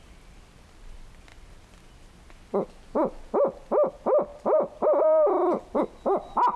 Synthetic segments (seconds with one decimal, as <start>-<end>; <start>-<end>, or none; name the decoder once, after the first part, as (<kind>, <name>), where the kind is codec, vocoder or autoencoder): 0.0-1.3 (vocoder, BigVGAN v2); 3.9-6.6